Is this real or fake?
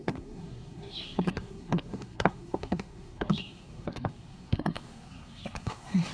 fake